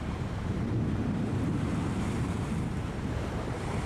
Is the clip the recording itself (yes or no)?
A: no